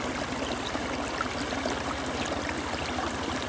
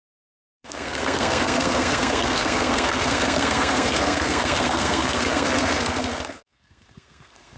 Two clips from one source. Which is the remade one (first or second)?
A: second